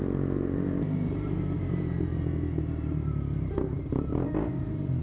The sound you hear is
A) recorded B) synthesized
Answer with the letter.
B